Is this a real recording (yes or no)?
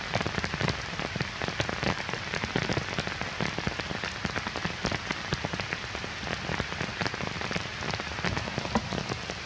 yes